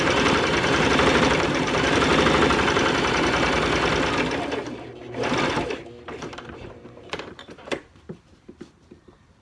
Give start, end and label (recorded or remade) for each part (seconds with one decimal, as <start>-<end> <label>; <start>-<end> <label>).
0.0-2.1 remade; 2.1-6.0 recorded; 6.0-9.4 remade

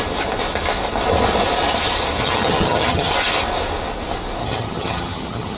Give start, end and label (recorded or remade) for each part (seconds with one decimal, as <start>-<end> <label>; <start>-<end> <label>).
0.0-2.2 recorded; 2.2-3.1 remade; 3.1-4.4 recorded; 4.4-5.6 remade

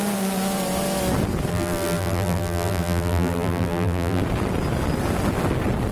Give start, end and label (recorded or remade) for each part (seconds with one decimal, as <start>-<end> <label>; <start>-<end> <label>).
0.0-1.5 recorded; 1.5-4.2 remade; 4.2-5.9 recorded

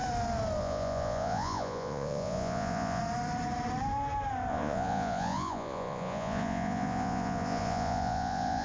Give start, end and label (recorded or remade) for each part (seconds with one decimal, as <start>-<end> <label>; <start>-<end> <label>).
0.0-0.6 recorded; 0.6-3.0 remade; 3.0-4.5 recorded; 4.5-8.6 remade

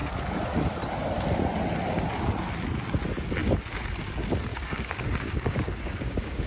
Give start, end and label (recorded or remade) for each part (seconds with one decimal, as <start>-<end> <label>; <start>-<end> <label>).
0.0-4.5 recorded; 4.5-6.5 remade

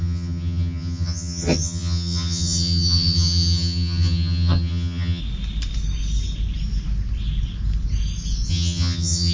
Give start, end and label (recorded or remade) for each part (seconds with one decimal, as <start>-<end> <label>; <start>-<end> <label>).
0.0-5.2 remade; 5.2-8.5 recorded; 8.5-9.3 remade

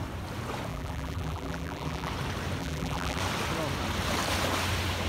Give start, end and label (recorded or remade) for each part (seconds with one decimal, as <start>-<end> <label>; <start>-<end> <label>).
0.0-0.7 recorded; 0.7-2.1 remade; 2.1-2.6 recorded; 2.6-3.2 remade; 3.2-5.1 recorded